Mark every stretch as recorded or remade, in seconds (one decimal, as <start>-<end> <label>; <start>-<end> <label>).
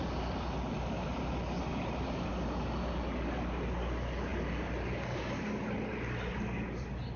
0.0-1.7 recorded; 1.7-2.3 remade; 2.3-7.2 recorded